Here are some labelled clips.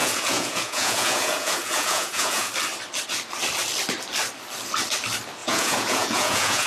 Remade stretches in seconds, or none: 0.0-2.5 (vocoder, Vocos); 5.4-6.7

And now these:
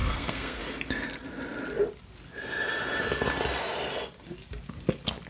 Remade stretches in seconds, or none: 0.0-0.6 (codec, SNAC)

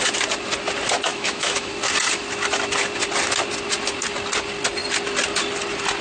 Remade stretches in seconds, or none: 1.1-1.7 (autoencoder, DAC-VAE)

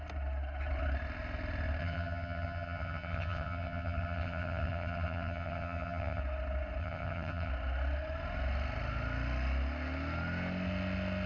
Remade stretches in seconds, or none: 1.8-6.2 (vocoder, HiFi-GAN); 6.8-7.5

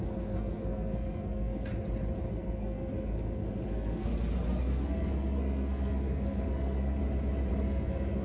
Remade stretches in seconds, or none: 0.0-1.7 (codec, SNAC); 2.3-4.1; 4.6-7.0; 7.5-8.2

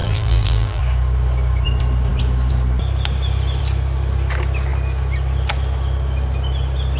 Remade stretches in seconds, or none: 0.0-0.8 (vocoder, BigVGAN v2)